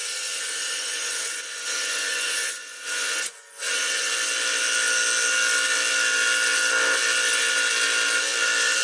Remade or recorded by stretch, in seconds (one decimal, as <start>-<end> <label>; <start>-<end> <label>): 0.0-4.1 remade; 4.1-8.8 recorded